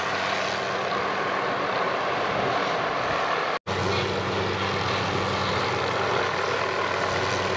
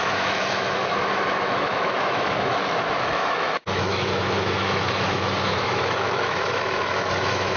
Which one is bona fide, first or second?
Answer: first